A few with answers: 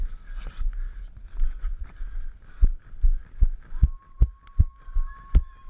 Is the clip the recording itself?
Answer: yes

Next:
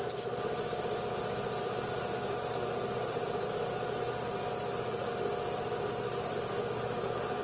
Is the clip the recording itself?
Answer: yes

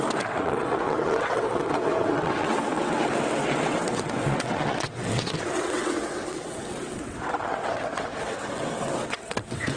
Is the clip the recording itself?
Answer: no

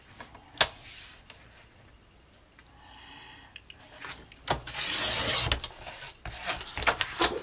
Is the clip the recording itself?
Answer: yes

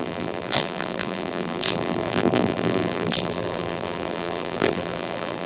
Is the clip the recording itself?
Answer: no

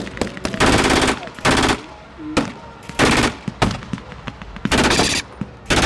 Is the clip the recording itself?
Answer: yes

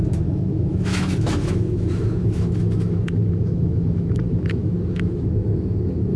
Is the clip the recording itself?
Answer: no